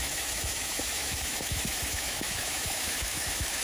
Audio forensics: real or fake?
fake